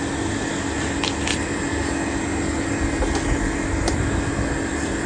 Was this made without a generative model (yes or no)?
yes